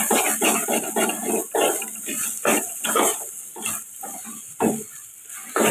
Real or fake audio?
real